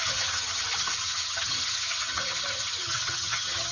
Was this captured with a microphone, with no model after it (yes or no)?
no